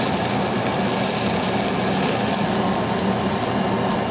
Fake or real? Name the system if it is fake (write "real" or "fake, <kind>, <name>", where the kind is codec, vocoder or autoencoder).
real